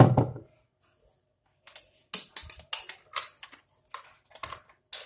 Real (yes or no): yes